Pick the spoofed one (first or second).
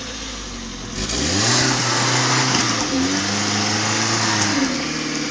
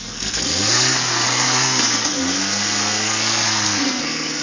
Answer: second